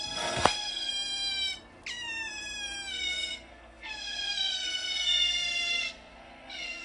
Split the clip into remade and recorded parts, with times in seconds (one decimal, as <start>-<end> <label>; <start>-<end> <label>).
0.0-0.9 remade; 0.9-2.9 recorded; 2.9-6.8 remade